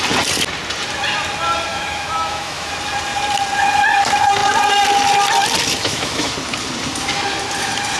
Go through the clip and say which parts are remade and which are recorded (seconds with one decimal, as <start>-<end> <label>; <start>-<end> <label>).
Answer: 0.0-1.7 recorded; 1.7-2.7 remade; 2.7-5.8 recorded; 5.8-6.3 remade; 6.3-8.0 recorded